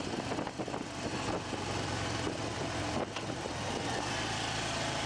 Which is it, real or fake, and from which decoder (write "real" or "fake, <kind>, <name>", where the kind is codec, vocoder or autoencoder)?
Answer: real